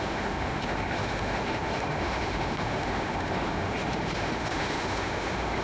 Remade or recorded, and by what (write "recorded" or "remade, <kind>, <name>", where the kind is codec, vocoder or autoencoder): remade, autoencoder, DAC-VAE